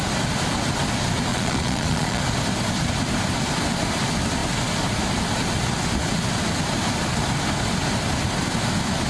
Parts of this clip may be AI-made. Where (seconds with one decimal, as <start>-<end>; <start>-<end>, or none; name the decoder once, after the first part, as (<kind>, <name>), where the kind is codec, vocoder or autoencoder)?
1.3-2.2 (vocoder, Vocos)